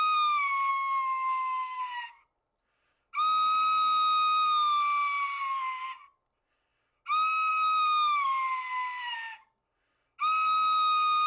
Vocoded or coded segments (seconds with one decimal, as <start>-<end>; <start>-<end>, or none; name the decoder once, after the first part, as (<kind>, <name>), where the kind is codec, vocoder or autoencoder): 0.7-1.8 (autoencoder, DAC-VAE)